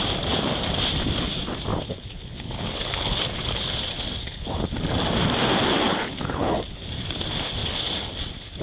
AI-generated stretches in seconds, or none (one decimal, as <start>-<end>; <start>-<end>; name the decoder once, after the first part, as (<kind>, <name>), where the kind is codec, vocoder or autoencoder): 1.7-3.7 (codec, HILCodec); 4.2-4.8; 5.9-6.8